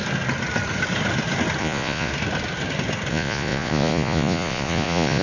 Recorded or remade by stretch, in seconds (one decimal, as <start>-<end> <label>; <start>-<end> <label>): 0.0-1.6 recorded; 1.6-2.1 remade; 2.1-3.1 recorded; 3.1-5.2 remade